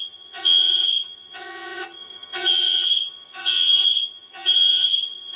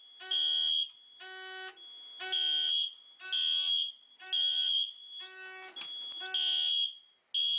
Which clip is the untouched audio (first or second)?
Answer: second